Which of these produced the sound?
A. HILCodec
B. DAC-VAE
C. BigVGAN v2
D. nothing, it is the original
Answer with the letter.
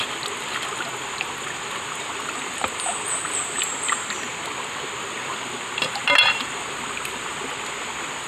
D